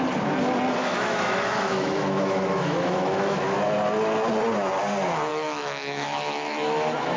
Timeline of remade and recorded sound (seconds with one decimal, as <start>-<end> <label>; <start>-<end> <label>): 0.0-0.8 recorded; 0.8-3.6 remade; 3.6-5.3 recorded; 5.3-7.2 remade